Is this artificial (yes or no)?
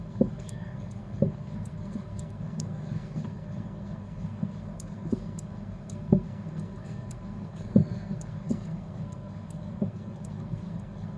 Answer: yes